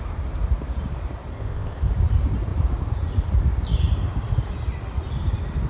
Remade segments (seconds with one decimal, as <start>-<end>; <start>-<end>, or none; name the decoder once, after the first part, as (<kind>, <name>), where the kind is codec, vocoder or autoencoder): 1.3-1.9 (codec, ZipCodec)